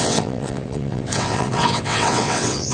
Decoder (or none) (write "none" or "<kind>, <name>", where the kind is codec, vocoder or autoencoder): vocoder, WaveNeXt